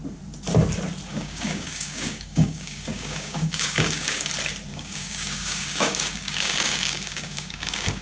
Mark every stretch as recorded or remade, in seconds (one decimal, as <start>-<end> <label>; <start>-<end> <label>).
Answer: 0.0-1.1 recorded; 1.1-4.3 remade; 4.3-4.7 recorded; 4.7-8.0 remade